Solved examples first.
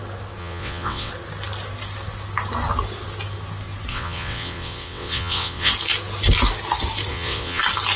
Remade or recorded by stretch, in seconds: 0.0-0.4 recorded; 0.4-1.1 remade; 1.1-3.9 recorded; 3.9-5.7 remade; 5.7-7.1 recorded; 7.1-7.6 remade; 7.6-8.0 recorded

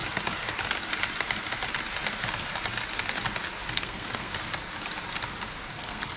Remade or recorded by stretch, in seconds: 0.0-3.7 recorded; 3.7-4.3 remade; 4.3-5.7 recorded; 5.7-6.2 remade

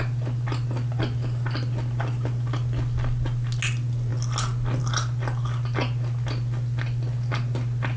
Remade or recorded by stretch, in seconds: 0.0-8.0 recorded

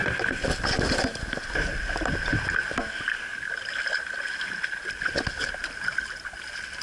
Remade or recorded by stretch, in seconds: 0.0-6.8 recorded

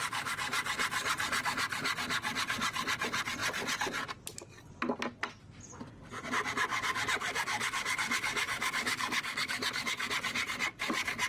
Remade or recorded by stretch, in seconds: 0.0-6.7 recorded; 6.7-10.1 remade; 10.1-11.3 recorded

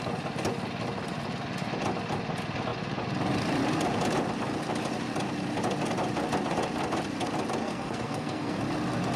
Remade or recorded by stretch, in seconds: 0.0-7.6 recorded; 7.6-8.6 remade; 8.6-9.2 recorded